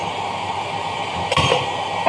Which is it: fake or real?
real